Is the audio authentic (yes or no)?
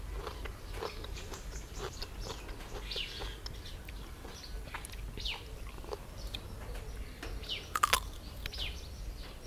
yes